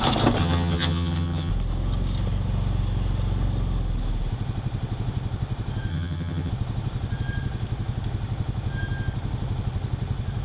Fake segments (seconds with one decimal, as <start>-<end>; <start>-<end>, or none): 0.4-1.5; 5.9-6.5